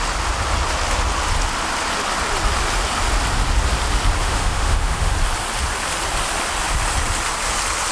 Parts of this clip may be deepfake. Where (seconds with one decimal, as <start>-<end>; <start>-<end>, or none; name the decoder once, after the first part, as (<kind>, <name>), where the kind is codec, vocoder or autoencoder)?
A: 4.2-5.1 (autoencoder, DAC-VAE)